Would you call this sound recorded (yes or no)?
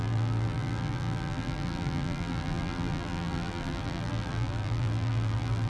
no